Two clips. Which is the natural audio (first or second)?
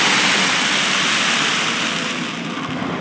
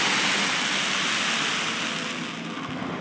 second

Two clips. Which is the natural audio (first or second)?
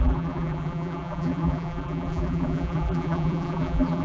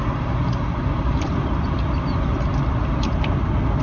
second